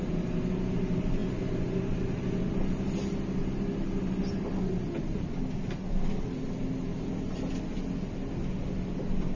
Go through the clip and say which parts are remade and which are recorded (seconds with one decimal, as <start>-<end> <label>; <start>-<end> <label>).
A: 0.0-9.4 recorded